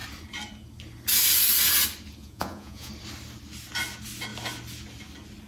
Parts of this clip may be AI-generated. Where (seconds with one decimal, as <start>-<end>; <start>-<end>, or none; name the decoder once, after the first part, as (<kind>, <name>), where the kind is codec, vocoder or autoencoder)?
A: 2.2-2.9 (vocoder, Vocos)